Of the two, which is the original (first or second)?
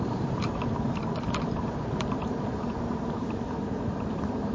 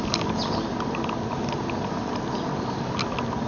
second